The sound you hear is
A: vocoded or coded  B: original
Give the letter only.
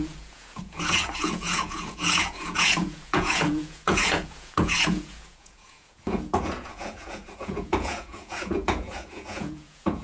A